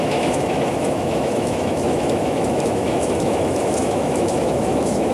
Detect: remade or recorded remade